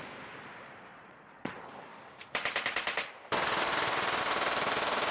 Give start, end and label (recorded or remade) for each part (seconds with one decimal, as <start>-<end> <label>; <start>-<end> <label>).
0.0-0.9 recorded; 0.9-1.5 remade; 1.5-5.1 recorded